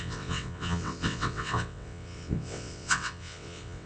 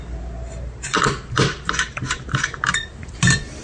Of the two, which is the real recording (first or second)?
second